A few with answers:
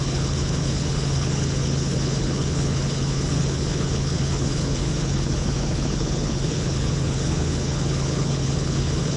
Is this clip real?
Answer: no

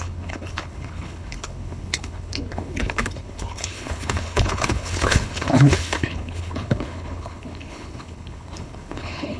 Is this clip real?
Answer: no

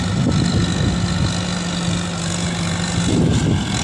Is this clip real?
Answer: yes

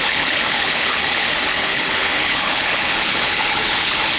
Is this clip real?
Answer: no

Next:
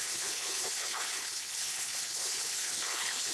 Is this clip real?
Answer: no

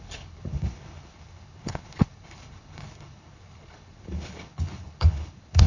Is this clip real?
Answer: no